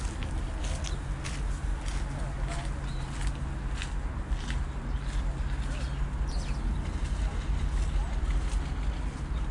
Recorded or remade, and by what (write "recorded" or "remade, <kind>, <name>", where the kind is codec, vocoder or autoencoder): recorded